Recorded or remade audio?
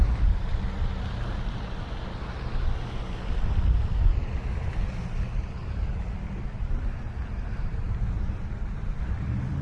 remade